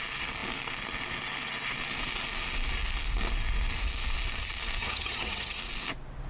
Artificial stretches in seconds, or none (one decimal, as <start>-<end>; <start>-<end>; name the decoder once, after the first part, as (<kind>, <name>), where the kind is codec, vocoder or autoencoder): 4.8-5.6 (vocoder, HiFi-GAN)